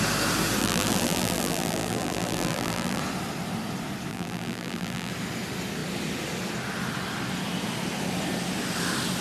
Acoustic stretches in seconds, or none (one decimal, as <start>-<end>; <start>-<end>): 0.0-0.6; 3.0-4.1; 5.1-9.2